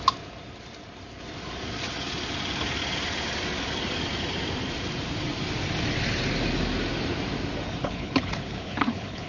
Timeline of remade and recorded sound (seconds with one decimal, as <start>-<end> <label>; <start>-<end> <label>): 0.0-7.8 recorded; 7.8-9.3 remade